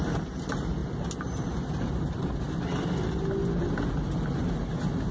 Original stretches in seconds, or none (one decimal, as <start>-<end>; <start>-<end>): 0.0-5.1